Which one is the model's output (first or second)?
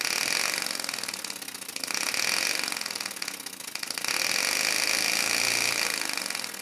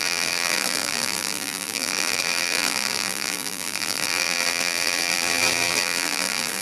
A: second